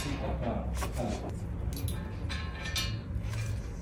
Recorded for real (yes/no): yes